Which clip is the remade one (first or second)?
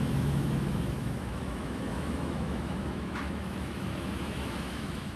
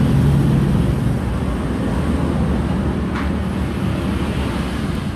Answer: first